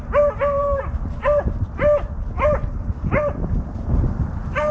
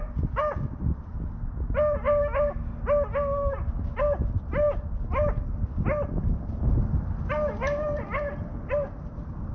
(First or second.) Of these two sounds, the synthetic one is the first